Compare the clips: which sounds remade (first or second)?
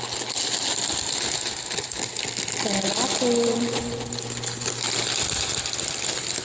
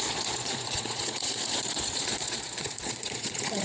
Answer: second